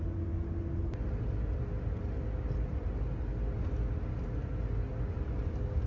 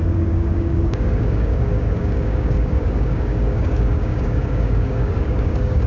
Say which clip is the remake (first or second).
second